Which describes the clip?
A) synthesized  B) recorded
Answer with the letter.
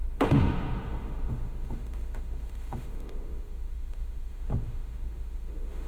A